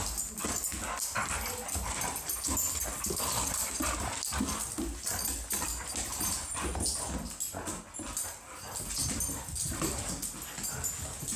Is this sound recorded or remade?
recorded